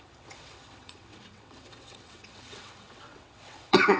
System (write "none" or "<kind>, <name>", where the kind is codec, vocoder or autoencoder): vocoder, WaveNeXt